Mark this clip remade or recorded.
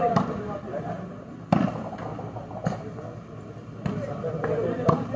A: recorded